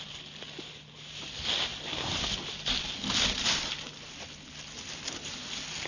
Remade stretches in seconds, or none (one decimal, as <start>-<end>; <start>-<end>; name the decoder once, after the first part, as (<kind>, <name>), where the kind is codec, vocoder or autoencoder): none

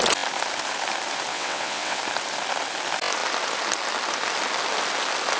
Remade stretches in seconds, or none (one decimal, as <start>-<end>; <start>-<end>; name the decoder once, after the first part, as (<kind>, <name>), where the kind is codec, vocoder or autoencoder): 1.3-2.0 (vocoder, WaveNeXt)

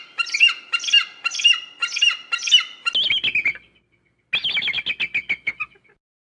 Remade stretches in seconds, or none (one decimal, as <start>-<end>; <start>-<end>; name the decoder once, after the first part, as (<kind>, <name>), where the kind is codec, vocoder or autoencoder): none

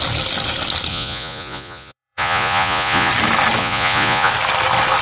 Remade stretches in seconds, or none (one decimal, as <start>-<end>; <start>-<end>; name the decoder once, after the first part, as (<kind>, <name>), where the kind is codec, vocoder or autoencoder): 0.9-3.1 (vocoder, Vocos); 3.6-4.3

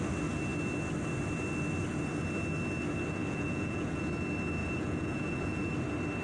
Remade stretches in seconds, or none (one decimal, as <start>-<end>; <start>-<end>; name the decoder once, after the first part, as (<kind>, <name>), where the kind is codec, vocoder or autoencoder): 3.2-4.0 (vocoder, Vocos); 4.6-5.7

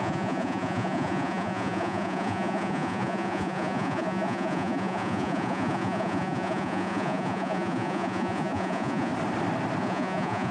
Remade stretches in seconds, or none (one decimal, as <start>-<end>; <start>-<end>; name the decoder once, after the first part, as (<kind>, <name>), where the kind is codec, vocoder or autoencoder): 0.0-9.1 (vocoder, Vocos); 9.8-10.5

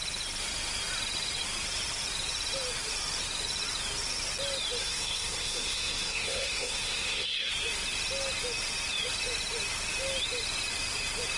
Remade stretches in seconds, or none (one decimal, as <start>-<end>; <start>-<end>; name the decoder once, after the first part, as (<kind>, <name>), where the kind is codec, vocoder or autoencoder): 4.8-7.5 (codec, SNAC)

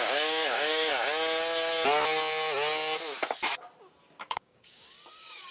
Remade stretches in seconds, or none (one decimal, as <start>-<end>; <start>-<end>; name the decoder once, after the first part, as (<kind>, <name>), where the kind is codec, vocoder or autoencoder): 0.0-0.9 (codec, DAC); 4.2-5.5